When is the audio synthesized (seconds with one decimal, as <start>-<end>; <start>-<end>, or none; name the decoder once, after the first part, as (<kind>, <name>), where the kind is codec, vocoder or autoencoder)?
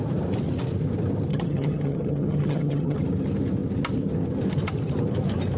1.3-3.0 (vocoder, HiFi-GAN)